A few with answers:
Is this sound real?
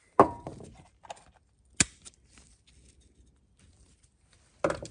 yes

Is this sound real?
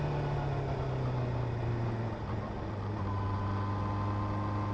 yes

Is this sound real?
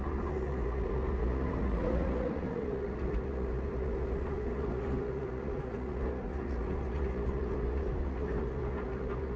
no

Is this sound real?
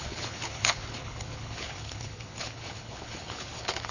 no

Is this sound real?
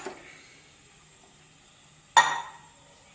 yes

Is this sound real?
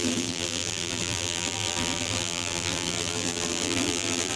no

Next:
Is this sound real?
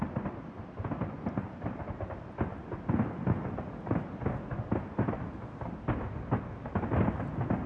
yes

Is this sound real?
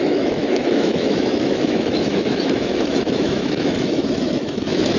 no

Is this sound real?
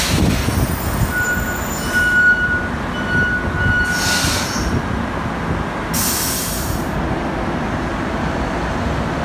yes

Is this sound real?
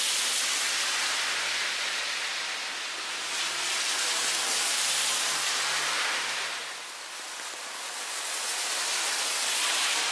yes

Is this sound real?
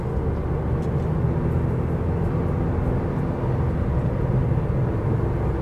yes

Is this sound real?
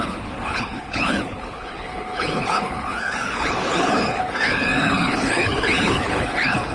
no